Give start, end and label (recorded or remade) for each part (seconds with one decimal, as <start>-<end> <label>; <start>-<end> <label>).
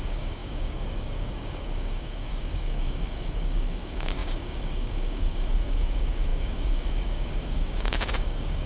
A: 0.0-8.7 remade